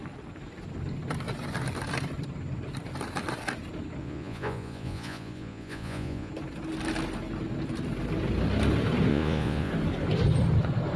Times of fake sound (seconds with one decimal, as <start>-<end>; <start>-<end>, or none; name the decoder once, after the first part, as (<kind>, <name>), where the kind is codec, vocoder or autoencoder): 4.0-6.3 (vocoder, Vocos); 9.1-9.7